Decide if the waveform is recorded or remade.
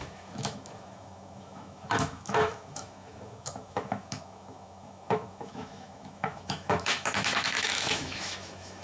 remade